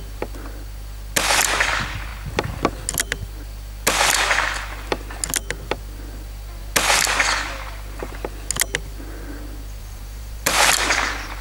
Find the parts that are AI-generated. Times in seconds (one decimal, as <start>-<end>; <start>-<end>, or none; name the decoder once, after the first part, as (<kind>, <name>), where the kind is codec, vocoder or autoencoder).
9.8-11.4 (vocoder, BigVGAN v2)